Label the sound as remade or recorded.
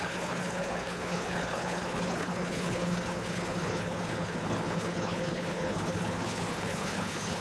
remade